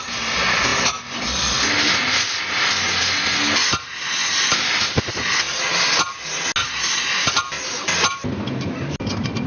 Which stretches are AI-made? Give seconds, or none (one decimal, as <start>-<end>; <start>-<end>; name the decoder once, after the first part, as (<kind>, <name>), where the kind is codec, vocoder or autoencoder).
none